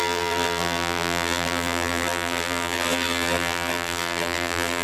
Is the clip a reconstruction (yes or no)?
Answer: yes